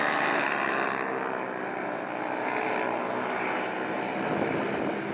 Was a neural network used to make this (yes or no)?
no